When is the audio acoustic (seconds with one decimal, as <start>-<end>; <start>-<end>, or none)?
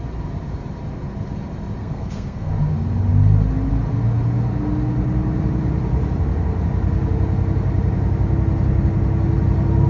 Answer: 0.0-1.8; 2.5-9.9